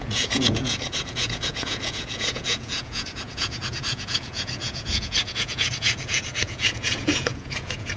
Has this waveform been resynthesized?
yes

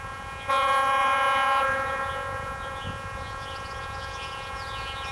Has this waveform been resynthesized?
yes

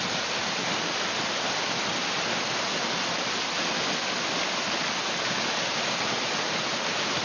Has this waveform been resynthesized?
no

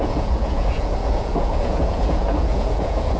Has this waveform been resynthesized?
yes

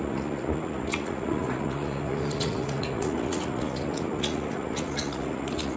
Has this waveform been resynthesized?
yes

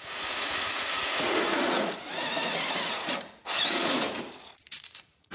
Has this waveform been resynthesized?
yes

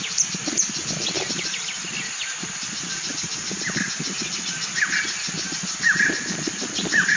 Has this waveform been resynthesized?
no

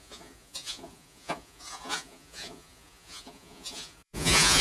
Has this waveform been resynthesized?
yes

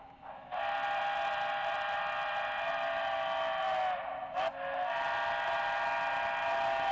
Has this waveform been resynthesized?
no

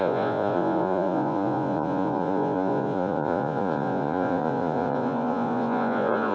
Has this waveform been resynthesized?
yes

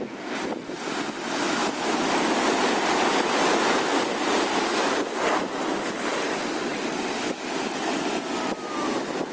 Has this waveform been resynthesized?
no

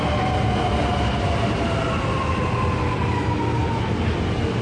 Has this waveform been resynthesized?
no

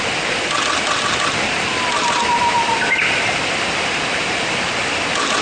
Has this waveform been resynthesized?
no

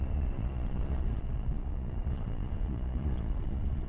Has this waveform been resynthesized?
yes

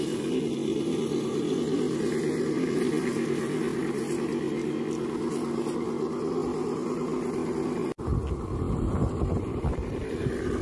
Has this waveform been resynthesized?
no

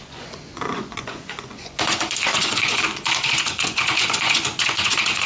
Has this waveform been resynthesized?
yes